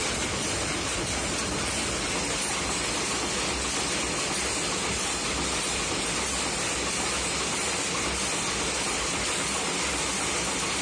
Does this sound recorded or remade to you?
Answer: recorded